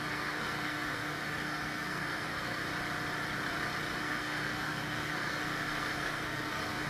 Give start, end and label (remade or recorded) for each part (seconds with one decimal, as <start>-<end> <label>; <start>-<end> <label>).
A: 0.0-2.6 remade; 2.6-4.0 recorded; 4.0-6.9 remade